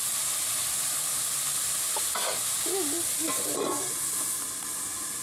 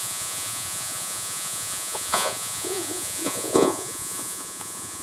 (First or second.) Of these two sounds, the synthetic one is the second